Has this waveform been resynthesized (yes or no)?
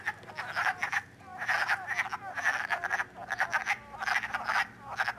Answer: no